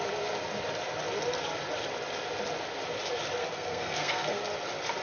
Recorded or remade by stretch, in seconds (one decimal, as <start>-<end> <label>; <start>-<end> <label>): 0.0-3.4 recorded; 3.4-4.4 remade; 4.4-5.0 recorded